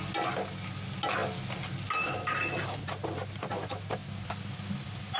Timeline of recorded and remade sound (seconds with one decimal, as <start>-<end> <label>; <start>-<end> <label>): 0.0-5.2 recorded